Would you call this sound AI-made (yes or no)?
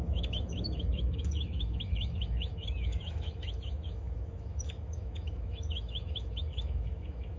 yes